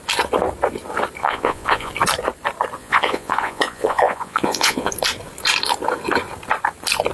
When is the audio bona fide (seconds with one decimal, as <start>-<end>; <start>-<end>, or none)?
0.0-1.2; 1.9-2.8; 4.9-7.1